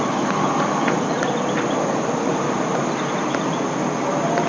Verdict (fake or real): real